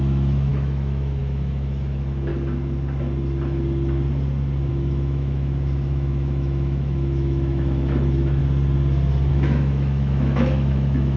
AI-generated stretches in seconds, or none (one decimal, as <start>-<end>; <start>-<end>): 0.0-2.3; 4.7-8.4; 9.3-11.2